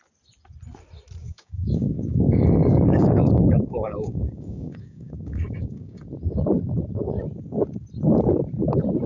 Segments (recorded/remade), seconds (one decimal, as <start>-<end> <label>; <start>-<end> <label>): 0.0-1.2 recorded; 1.2-6.0 remade; 6.0-9.1 recorded